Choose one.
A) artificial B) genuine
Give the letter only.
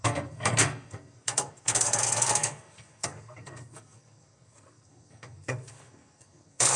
A